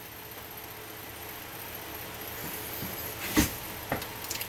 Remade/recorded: recorded